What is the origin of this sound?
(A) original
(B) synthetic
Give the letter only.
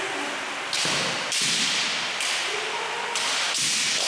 A